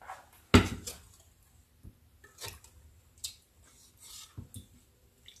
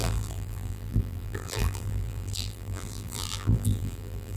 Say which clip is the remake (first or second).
second